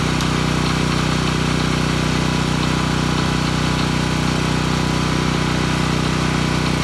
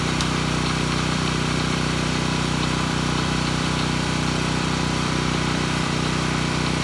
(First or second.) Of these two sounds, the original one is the first